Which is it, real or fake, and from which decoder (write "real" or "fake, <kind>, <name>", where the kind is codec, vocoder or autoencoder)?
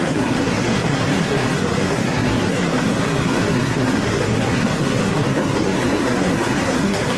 fake, codec, SNAC